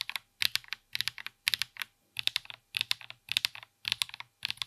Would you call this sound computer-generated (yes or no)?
no